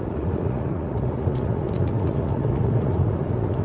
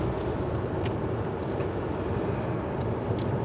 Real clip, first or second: second